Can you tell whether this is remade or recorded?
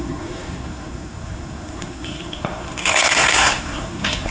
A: remade